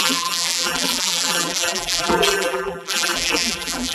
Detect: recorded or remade remade